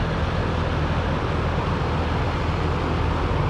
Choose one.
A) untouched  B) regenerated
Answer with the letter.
A